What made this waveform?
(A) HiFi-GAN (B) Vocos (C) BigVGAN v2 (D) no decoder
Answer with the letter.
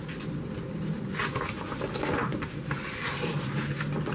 D